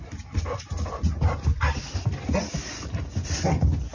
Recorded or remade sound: recorded